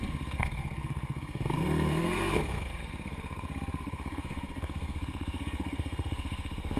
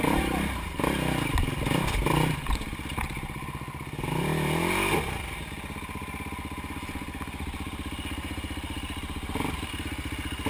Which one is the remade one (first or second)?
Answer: first